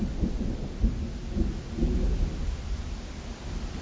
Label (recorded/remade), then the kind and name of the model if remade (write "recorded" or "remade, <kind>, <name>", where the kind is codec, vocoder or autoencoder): recorded